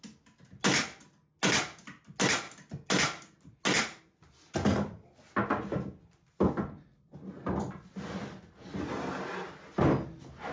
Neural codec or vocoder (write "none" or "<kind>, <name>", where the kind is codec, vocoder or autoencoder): none